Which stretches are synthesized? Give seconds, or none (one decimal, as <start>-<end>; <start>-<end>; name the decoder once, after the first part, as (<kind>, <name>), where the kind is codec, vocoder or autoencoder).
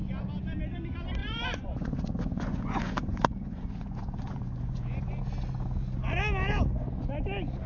1.2-5.2 (vocoder, Vocos)